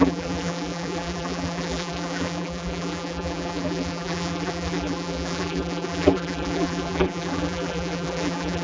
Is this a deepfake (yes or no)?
yes